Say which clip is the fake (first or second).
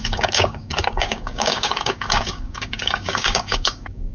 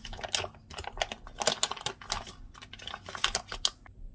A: first